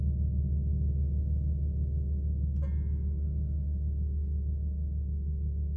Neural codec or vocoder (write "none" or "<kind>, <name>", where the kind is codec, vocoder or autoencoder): none